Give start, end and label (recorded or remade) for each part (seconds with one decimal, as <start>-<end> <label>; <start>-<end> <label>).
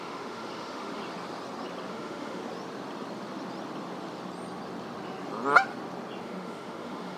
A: 0.0-1.0 remade; 1.0-1.9 recorded; 1.9-2.4 remade; 2.4-6.2 recorded; 6.2-7.2 remade